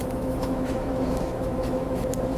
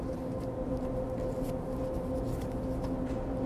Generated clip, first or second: first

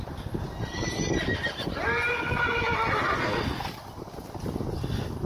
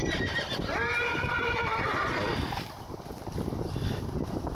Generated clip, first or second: second